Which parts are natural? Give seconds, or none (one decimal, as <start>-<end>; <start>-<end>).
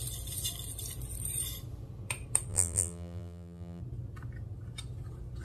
0.0-2.5; 3.8-5.4